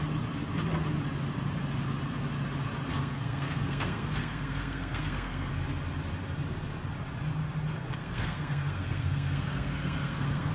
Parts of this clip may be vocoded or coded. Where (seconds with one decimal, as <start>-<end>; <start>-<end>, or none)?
2.9-5.5; 8.0-10.5